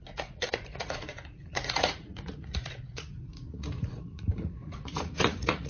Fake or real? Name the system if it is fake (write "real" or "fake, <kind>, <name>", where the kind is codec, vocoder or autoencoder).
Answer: fake, vocoder, Vocos